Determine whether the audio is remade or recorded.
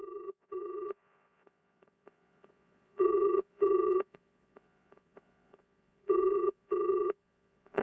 remade